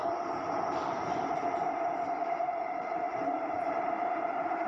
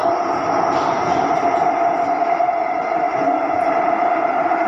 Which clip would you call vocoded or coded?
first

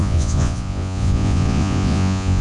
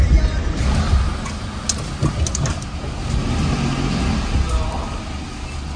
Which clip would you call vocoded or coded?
first